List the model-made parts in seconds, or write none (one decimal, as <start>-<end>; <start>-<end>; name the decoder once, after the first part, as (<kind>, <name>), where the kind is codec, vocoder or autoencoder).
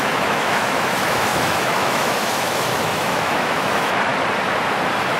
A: 0.0-4.1 (autoencoder, DAC-VAE)